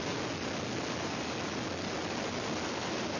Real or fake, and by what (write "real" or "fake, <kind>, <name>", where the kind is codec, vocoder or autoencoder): real